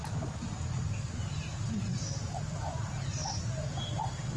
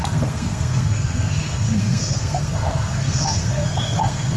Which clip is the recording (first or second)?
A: first